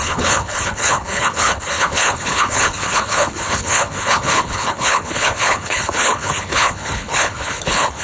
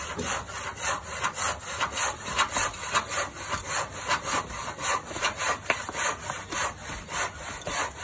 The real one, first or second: second